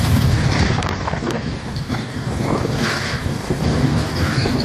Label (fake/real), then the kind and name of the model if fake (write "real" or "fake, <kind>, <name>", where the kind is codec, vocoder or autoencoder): fake, codec, DAC